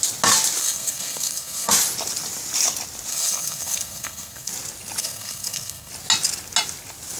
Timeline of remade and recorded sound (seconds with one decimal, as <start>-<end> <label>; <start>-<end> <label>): 0.0-0.6 recorded; 0.6-1.7 remade; 1.7-3.1 recorded; 3.1-4.5 remade; 4.5-5.0 recorded; 5.0-5.9 remade; 5.9-7.2 recorded